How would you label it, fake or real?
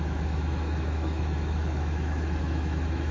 fake